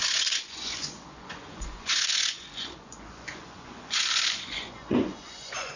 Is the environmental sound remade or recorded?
remade